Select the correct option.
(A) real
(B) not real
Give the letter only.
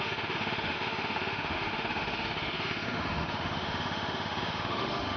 B